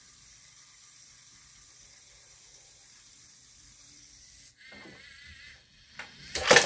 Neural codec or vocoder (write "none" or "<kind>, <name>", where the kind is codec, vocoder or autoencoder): vocoder, BigVGAN v2